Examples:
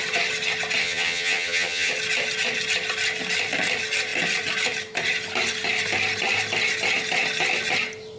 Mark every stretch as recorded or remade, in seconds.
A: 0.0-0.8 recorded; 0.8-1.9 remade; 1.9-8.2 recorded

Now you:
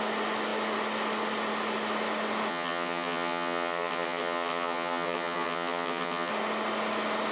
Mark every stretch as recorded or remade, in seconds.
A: 0.0-2.5 recorded; 2.5-6.3 remade; 6.3-7.3 recorded

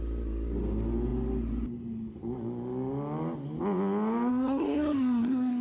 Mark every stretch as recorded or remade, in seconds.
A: 0.0-4.3 recorded; 4.3-5.6 remade

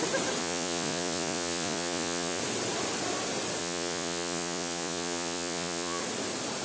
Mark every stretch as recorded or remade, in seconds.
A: 0.0-0.4 recorded; 0.4-2.4 remade; 2.4-3.6 recorded; 3.6-6.0 remade; 6.0-6.6 recorded

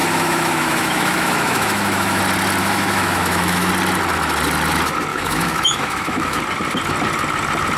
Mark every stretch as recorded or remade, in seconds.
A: 0.0-2.2 remade; 2.2-2.6 recorded; 2.6-3.7 remade; 3.7-5.1 recorded; 5.1-6.4 remade; 6.4-7.8 recorded

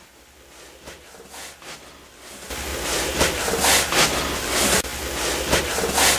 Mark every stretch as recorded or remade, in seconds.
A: 0.0-2.7 recorded; 2.7-3.6 remade; 3.6-6.2 recorded